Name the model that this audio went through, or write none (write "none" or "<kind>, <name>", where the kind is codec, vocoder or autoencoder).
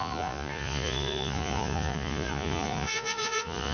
vocoder, Vocos